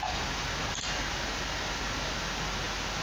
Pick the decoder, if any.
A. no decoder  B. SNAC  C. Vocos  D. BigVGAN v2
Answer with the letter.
A